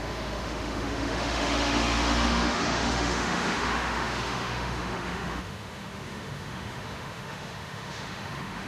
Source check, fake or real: fake